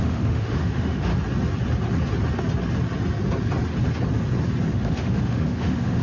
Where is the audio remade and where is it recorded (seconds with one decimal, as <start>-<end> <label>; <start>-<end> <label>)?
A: 0.0-1.1 remade; 1.1-4.7 recorded; 4.7-6.0 remade